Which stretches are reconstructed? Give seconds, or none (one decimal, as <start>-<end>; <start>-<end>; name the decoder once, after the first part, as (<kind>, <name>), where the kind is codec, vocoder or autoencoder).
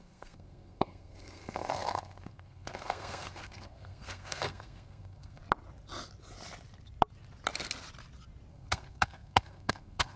0.0-5.4 (codec, SNAC); 8.5-10.2